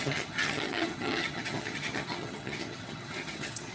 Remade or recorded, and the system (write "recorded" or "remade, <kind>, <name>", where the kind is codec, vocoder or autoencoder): remade, vocoder, HiFi-GAN